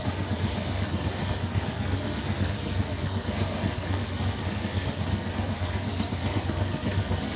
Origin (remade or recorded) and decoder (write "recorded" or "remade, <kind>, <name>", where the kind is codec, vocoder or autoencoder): remade, codec, SNAC